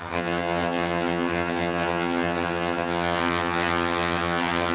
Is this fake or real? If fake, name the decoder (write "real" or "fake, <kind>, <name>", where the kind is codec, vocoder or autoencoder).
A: fake, vocoder, HiFi-GAN